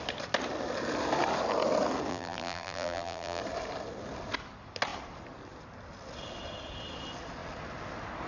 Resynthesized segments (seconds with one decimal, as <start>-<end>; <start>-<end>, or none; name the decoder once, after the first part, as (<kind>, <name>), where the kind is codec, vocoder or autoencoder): 2.1-3.4 (vocoder, BigVGAN v2)